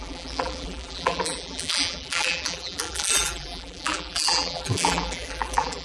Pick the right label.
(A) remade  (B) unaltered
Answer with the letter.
A